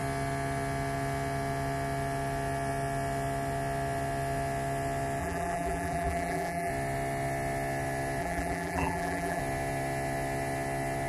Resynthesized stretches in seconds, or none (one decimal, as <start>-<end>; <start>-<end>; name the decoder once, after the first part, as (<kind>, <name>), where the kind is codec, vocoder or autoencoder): 5.2-6.7 (vocoder, BigVGAN v2); 8.2-9.4